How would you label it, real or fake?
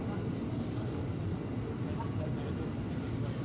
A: real